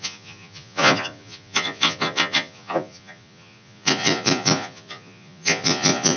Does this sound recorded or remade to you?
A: remade